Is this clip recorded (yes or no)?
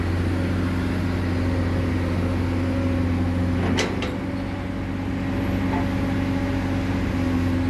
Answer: yes